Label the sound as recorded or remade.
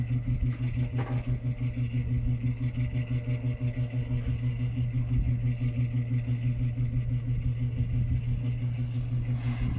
recorded